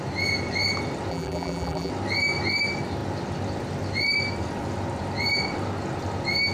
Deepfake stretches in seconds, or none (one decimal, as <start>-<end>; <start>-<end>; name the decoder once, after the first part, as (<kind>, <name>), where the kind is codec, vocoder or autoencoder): 1.1-1.9 (vocoder, BigVGAN v2)